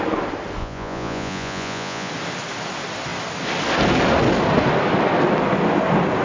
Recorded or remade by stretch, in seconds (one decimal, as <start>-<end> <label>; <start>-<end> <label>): 0.0-0.6 recorded; 0.6-2.1 remade; 2.1-6.2 recorded